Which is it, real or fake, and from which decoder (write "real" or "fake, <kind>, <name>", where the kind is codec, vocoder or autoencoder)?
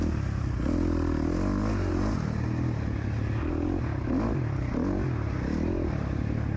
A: real